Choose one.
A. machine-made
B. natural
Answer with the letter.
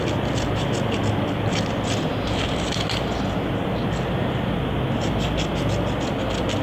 B